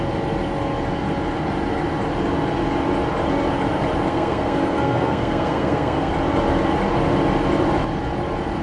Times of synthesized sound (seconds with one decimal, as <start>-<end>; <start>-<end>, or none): 4.1-6.1